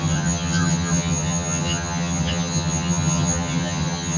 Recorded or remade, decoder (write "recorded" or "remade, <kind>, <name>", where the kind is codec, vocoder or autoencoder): remade, vocoder, HiFi-GAN